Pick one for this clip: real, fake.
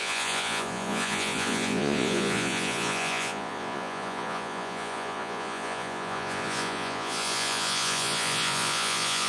fake